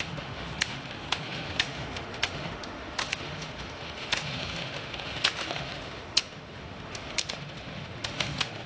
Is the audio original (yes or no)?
no